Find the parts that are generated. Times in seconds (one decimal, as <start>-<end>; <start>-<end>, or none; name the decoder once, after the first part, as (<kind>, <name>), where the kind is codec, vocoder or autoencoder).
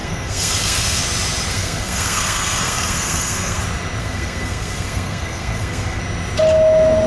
0.0-1.0 (codec, SNAC); 1.5-3.6; 4.0-6.0